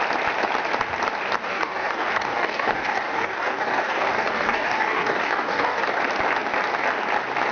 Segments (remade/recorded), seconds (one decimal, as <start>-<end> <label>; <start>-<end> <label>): 0.0-1.4 recorded; 1.4-5.8 remade; 5.8-7.5 recorded